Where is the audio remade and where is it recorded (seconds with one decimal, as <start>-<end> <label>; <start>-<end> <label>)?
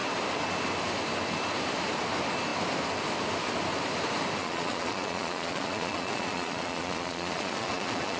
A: 0.0-4.4 recorded; 4.4-8.2 remade